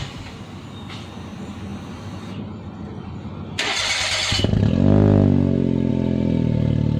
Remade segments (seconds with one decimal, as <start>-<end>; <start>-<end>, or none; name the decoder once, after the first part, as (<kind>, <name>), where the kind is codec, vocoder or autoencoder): none